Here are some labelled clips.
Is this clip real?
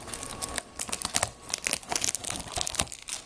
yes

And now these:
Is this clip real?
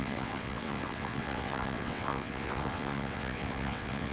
no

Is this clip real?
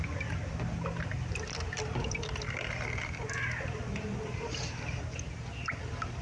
yes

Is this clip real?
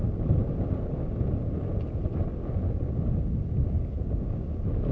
yes